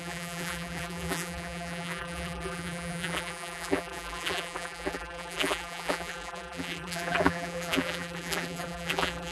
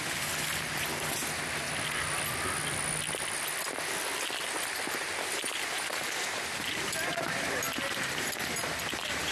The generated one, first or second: first